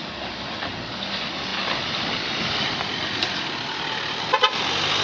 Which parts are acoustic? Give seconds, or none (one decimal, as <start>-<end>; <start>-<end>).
0.0-5.0